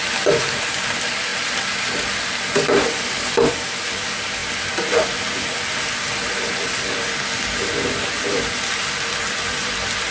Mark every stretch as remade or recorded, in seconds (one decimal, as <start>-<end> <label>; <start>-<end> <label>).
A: 0.0-10.1 recorded